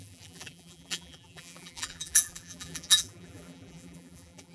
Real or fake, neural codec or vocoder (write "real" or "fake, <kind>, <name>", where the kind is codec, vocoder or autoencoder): fake, vocoder, BigVGAN v2